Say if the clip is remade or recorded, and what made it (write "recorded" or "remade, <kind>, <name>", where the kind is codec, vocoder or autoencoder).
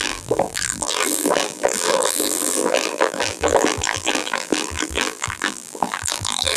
remade, vocoder, BigVGAN v2